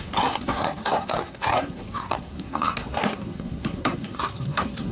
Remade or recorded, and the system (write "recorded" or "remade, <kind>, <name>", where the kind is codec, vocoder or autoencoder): remade, codec, SNAC